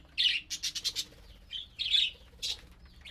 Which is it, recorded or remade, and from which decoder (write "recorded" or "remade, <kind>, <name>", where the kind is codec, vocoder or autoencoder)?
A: recorded